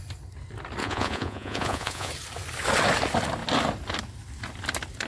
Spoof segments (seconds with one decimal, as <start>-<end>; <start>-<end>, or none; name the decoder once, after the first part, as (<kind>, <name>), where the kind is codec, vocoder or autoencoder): 0.8-2.1 (vocoder, Vocos)